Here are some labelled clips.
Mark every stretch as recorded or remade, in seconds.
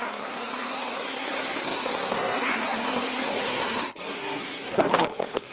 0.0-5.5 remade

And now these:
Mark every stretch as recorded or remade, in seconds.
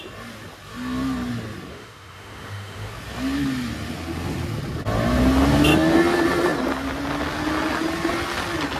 0.0-1.7 recorded; 1.7-2.9 remade; 2.9-8.8 recorded